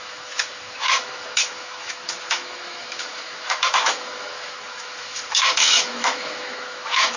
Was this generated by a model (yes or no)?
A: yes